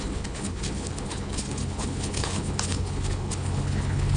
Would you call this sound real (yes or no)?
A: no